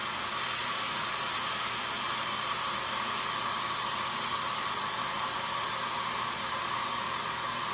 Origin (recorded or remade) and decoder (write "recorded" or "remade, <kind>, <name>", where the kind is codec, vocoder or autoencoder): recorded